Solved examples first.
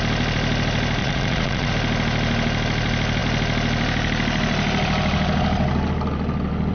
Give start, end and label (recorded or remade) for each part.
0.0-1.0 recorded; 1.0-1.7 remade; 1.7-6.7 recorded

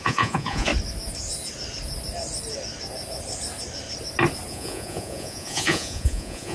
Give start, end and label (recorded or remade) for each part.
0.0-0.7 remade; 0.7-4.5 recorded; 4.5-6.5 remade

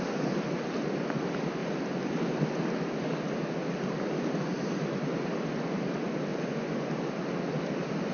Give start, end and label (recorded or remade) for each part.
0.0-6.3 recorded; 6.3-6.9 remade; 6.9-8.1 recorded

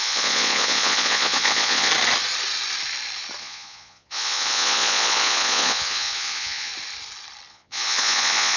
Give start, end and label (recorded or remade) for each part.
0.0-1.9 remade; 1.9-3.4 recorded; 3.4-6.7 remade; 6.7-7.5 recorded; 7.5-8.6 remade

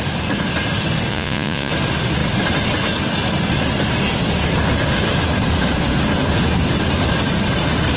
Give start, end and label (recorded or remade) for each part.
0.0-1.1 recorded; 1.1-1.7 remade; 1.7-8.0 recorded